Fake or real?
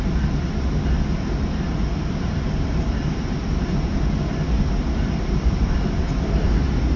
real